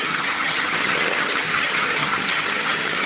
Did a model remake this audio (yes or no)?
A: yes